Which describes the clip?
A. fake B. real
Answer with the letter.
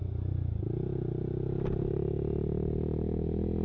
B